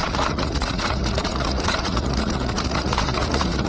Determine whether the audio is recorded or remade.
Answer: remade